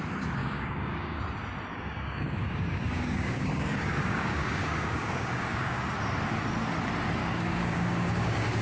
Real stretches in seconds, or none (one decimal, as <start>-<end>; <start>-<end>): 0.0-0.4; 1.2-1.7; 5.8-7.2